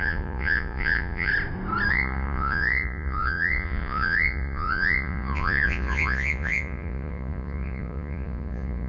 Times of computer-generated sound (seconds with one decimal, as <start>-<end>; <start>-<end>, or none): 0.0-1.3; 1.9-8.9